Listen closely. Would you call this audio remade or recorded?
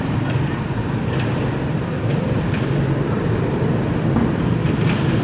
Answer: remade